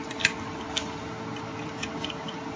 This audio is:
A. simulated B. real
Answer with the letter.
B